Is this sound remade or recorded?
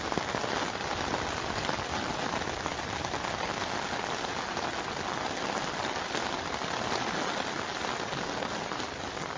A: recorded